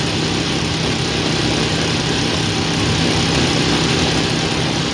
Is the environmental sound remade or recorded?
recorded